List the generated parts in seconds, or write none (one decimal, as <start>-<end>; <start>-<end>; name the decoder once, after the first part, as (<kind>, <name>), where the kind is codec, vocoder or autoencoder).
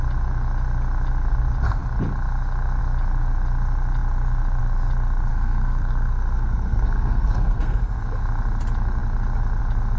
5.3-7.8 (codec, SNAC)